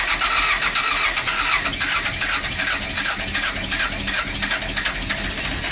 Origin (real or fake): real